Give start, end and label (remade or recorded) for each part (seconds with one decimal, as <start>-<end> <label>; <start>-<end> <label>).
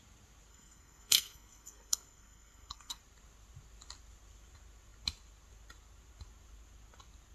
0.0-0.5 recorded; 0.5-3.0 remade; 3.0-7.3 recorded